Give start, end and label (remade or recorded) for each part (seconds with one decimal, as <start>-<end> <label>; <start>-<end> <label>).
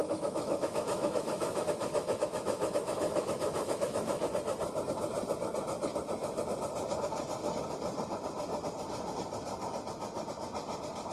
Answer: 0.0-4.2 remade; 4.2-11.1 recorded